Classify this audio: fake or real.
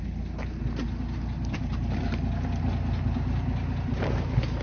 real